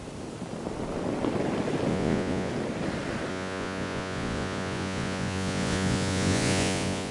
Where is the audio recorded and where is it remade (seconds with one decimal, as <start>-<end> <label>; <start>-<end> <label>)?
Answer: 0.0-1.9 recorded; 1.9-2.5 remade; 2.5-3.3 recorded; 3.3-7.1 remade